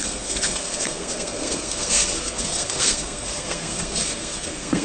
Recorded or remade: remade